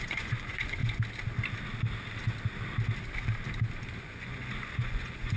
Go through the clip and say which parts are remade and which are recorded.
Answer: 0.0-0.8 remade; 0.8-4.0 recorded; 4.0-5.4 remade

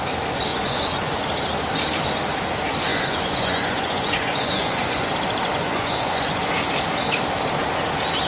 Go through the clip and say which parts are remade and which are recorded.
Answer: 0.0-0.5 recorded; 0.5-1.2 remade; 1.2-2.9 recorded; 2.9-5.1 remade; 5.1-5.5 recorded; 5.5-6.5 remade; 6.5-8.3 recorded

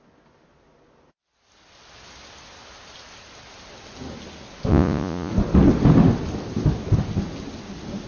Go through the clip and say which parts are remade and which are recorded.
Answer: 0.0-4.7 recorded; 4.7-5.3 remade; 5.3-8.1 recorded

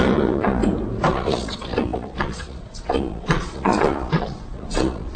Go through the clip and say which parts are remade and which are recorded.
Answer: 0.0-0.6 remade; 0.6-1.1 recorded; 1.1-5.2 remade

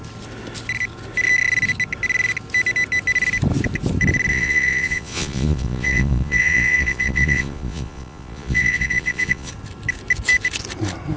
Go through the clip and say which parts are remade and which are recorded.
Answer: 0.0-4.3 recorded; 4.3-9.5 remade; 9.5-11.2 recorded

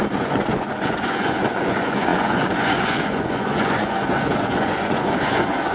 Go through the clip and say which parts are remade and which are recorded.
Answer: 0.0-5.7 remade

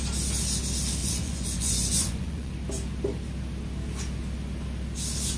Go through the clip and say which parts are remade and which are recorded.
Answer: 0.0-1.0 recorded; 1.0-2.5 remade; 2.5-5.4 recorded

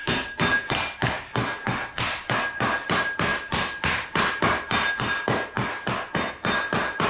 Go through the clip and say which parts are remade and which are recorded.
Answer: 0.0-7.1 recorded